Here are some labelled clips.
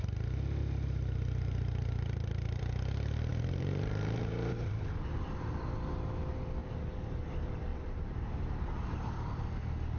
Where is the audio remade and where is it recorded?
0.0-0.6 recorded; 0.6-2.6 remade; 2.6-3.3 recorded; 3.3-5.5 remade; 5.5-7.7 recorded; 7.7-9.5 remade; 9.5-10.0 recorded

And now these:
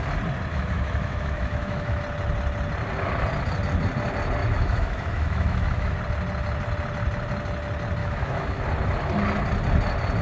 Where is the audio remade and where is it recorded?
0.0-0.5 recorded; 0.5-2.0 remade; 2.0-4.4 recorded; 4.4-6.0 remade; 6.0-8.0 recorded; 8.0-8.6 remade; 8.6-10.2 recorded

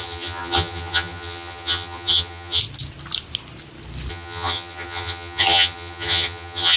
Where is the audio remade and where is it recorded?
0.0-2.6 remade; 2.6-4.1 recorded; 4.1-6.8 remade

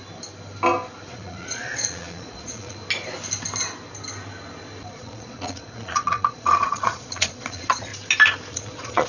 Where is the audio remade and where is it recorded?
0.0-1.1 recorded; 1.1-2.8 remade; 2.8-4.9 recorded; 4.9-7.9 remade; 7.9-8.5 recorded; 8.5-9.1 remade